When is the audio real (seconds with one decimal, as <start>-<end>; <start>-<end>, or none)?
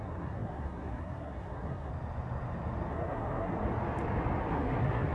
1.9-2.9; 3.5-4.5